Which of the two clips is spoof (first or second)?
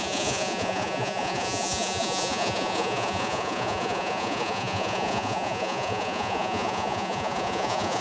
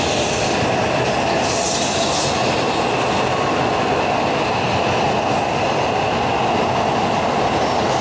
first